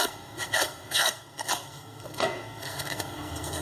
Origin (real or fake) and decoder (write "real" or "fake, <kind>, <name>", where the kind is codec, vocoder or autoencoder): fake, codec, SNAC